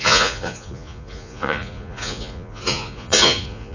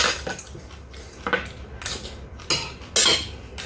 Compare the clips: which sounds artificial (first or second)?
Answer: first